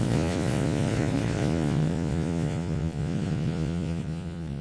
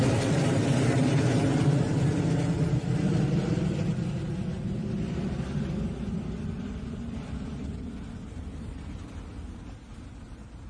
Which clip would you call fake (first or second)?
first